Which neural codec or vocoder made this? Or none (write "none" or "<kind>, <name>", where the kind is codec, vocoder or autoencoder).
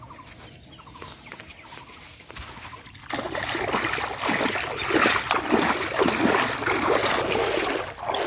none